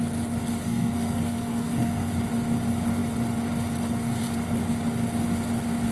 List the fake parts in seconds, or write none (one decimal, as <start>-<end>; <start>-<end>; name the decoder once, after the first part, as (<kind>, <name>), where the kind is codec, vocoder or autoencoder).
0.6-2.1 (codec, SNAC)